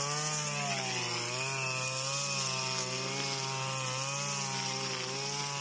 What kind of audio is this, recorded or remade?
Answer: recorded